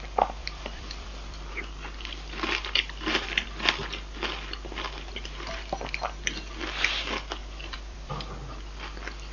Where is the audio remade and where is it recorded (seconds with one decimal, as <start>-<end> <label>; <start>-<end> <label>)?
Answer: 0.0-0.4 recorded; 0.4-1.5 remade; 1.5-3.1 recorded; 3.1-3.8 remade; 3.8-7.4 recorded; 7.4-8.1 remade; 8.1-9.3 recorded